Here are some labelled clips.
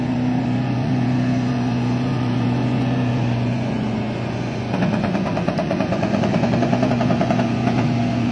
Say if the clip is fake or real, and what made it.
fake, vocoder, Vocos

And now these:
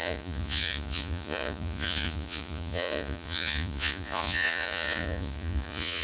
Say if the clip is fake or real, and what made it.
fake, vocoder, Vocos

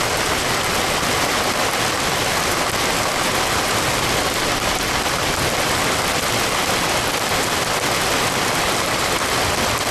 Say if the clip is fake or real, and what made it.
real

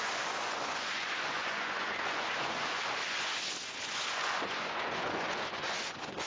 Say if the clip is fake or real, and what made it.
fake, vocoder, Vocos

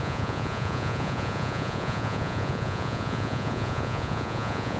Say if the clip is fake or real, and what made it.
fake, vocoder, Vocos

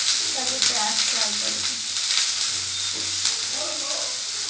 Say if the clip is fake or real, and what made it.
real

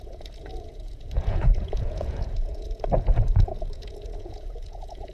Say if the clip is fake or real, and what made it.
fake, vocoder, Vocos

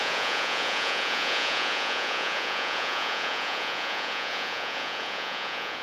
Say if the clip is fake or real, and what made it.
fake, vocoder, Vocos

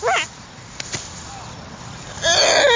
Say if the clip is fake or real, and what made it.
real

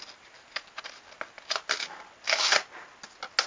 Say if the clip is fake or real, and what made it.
real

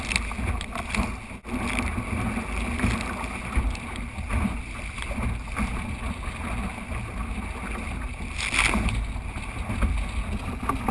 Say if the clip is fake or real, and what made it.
real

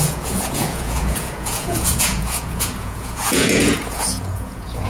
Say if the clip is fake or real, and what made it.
fake, vocoder, Vocos